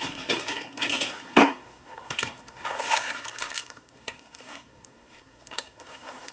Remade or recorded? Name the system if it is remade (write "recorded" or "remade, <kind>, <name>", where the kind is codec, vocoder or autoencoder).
remade, codec, SNAC